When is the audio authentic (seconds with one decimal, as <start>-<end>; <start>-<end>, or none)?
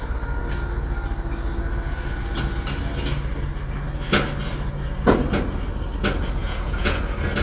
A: 0.0-6.4; 7.0-7.4